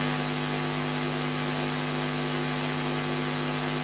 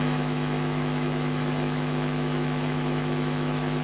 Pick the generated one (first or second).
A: second